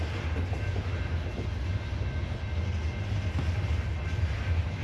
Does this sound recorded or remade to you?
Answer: recorded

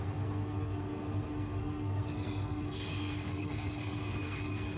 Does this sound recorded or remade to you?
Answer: remade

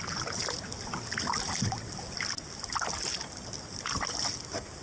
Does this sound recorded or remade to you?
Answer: recorded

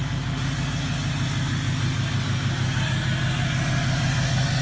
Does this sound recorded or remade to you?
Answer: recorded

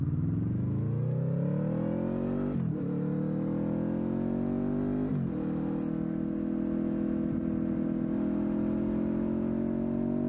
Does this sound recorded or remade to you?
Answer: recorded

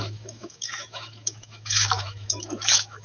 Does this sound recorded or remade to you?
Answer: remade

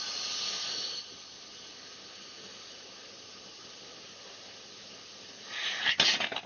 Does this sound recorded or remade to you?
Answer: recorded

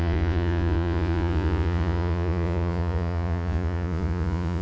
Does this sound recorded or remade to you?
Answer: remade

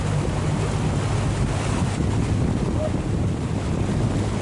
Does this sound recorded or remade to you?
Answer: recorded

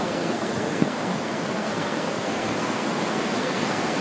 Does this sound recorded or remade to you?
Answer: remade